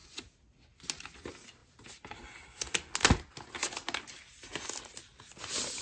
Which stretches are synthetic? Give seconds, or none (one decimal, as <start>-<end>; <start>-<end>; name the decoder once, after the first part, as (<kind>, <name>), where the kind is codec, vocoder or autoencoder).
none